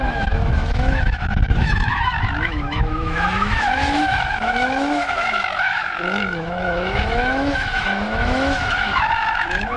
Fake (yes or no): yes